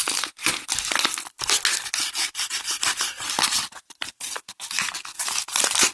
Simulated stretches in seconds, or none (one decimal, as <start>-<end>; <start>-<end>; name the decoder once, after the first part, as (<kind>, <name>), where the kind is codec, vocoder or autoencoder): 3.7-4.6 (vocoder, BigVGAN v2); 5.2-5.9